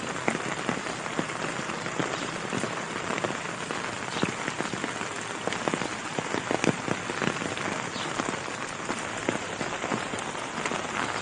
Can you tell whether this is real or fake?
real